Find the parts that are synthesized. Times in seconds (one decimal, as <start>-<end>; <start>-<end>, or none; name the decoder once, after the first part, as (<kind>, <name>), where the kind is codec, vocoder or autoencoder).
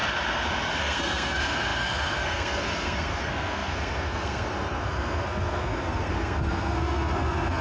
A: 0.8-7.6 (codec, SNAC)